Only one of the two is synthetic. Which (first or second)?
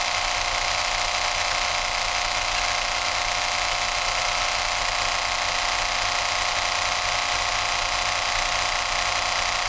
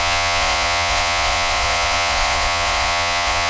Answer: second